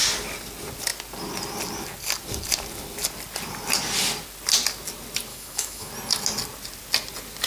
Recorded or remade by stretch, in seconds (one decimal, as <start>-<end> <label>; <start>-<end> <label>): 0.0-5.3 recorded; 5.3-5.9 remade; 5.9-7.5 recorded